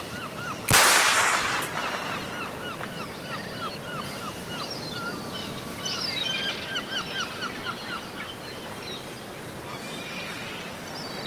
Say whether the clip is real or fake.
real